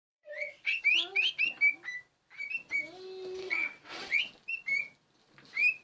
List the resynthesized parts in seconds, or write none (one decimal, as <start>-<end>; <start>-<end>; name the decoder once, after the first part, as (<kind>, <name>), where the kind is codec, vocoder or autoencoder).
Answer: 0.0-0.8 (vocoder, WaveNeXt); 3.4-4.2